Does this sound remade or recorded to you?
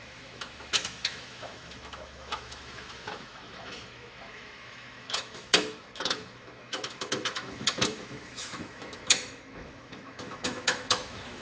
remade